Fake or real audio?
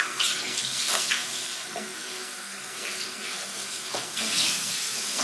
fake